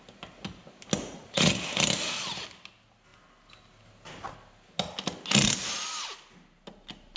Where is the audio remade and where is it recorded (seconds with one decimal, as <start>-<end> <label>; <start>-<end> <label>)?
0.0-1.0 recorded; 1.0-1.5 remade; 1.5-7.2 recorded